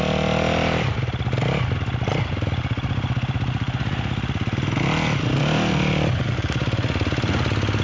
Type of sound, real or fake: real